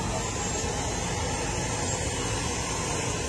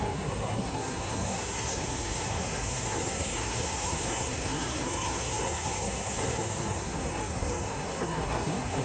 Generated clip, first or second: second